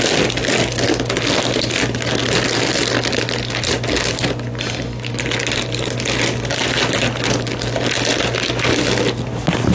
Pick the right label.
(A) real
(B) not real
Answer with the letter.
A